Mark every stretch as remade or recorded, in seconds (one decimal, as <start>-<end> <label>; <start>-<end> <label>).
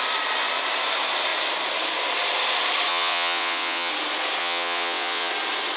0.0-2.9 recorded; 2.9-3.9 remade; 3.9-4.4 recorded; 4.4-5.3 remade; 5.3-5.8 recorded